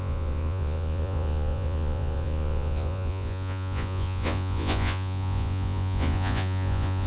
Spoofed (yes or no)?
yes